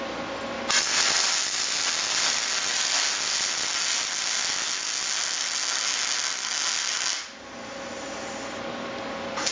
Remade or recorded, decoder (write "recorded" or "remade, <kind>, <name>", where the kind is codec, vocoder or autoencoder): recorded